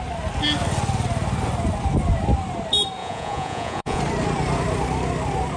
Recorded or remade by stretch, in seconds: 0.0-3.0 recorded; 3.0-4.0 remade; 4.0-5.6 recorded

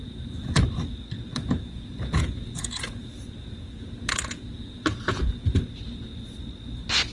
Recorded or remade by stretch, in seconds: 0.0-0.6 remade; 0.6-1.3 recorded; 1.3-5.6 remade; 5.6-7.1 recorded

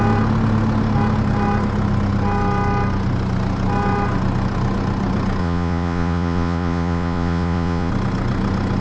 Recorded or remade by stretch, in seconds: 0.0-5.4 recorded; 5.4-7.9 remade; 7.9-8.8 recorded

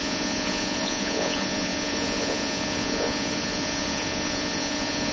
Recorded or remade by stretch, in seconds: 0.0-5.1 remade

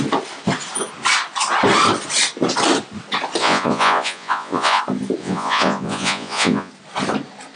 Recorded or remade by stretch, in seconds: 0.0-3.4 recorded; 3.4-4.8 remade; 4.8-5.2 recorded; 5.2-6.7 remade; 6.7-7.6 recorded